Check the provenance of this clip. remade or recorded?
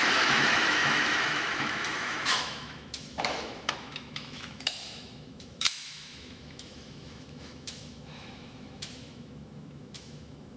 remade